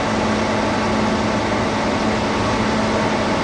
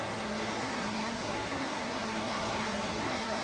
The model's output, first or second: second